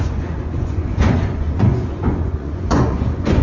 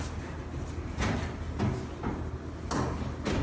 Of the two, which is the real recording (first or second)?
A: second